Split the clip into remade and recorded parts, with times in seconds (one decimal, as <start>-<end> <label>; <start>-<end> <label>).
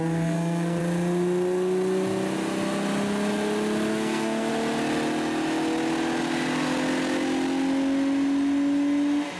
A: 0.0-0.8 remade; 0.8-3.9 recorded; 3.9-4.5 remade; 4.5-9.4 recorded